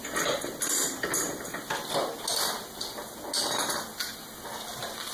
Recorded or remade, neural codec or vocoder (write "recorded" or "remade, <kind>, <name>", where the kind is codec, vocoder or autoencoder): recorded